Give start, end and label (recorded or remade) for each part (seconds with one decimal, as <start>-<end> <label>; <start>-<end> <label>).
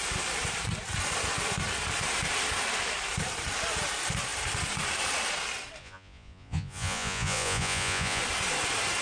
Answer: 0.0-5.8 recorded; 5.8-8.2 remade; 8.2-9.0 recorded